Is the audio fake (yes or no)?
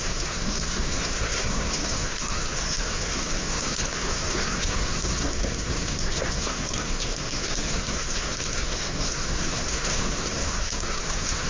yes